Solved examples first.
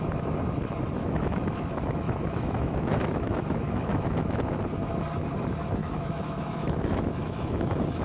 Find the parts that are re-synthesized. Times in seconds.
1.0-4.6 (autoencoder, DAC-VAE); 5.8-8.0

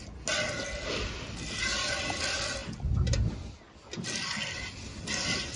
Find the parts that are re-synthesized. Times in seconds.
none

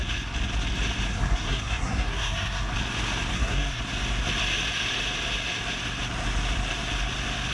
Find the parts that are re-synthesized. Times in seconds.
1.1-2.7 (codec, SNAC); 3.3-3.8

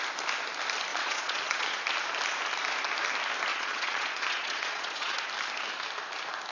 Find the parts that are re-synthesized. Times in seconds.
0.9-1.8 (vocoder, Vocos); 3.5-5.3

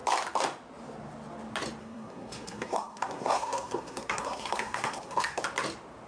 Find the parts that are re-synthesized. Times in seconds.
1.8-5.4 (codec, SNAC)

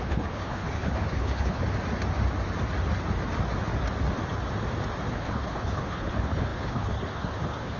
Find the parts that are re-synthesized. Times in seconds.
0.0-1.6 (codec, HILCodec); 5.1-7.8

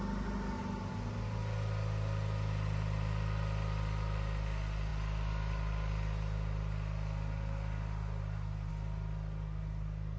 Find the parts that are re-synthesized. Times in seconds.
none